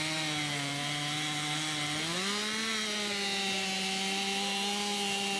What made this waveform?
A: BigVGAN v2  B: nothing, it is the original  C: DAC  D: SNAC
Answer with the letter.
B